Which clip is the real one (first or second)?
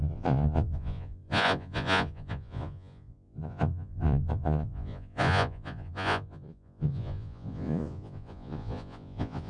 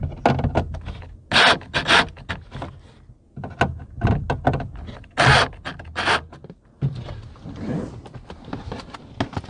second